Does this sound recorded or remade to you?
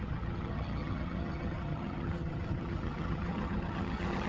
remade